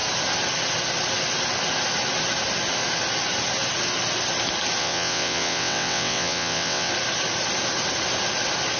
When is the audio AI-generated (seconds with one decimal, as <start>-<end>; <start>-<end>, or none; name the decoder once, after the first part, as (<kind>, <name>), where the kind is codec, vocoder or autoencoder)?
4.8-6.9 (vocoder, WaveNeXt)